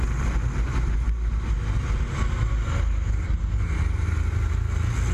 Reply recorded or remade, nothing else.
recorded